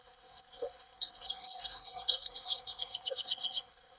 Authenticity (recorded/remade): remade